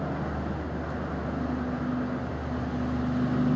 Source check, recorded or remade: recorded